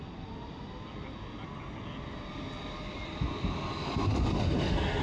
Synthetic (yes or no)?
no